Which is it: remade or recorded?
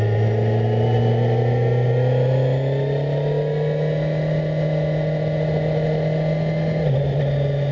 recorded